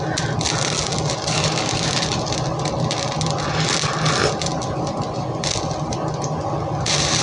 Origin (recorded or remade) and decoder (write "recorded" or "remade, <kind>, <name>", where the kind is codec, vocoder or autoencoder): recorded